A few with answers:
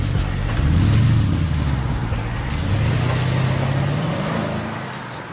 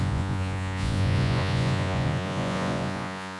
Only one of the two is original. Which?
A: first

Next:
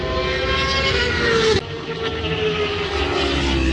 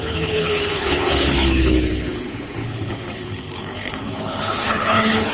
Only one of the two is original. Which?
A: first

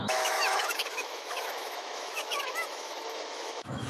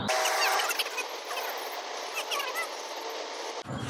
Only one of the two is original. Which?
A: second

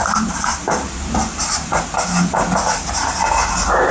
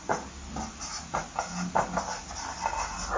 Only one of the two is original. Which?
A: second